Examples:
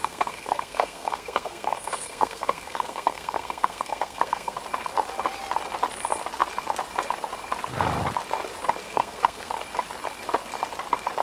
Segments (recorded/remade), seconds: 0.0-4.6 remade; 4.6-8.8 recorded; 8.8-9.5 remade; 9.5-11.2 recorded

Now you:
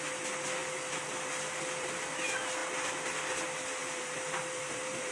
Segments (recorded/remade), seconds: 0.0-3.8 recorded; 3.8-5.1 remade

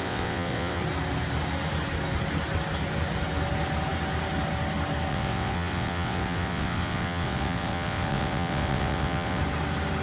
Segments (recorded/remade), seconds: 0.0-0.8 remade; 0.8-5.1 recorded; 5.1-9.4 remade; 9.4-10.0 recorded